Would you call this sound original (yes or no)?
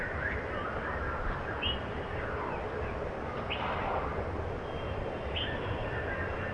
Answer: yes